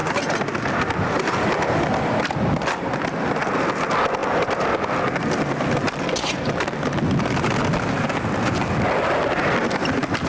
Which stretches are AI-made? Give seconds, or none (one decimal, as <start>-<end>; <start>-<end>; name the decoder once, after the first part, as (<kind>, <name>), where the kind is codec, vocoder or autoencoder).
4.2-5.1 (vocoder, BigVGAN v2)